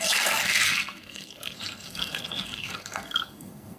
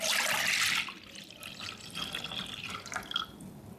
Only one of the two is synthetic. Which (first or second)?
first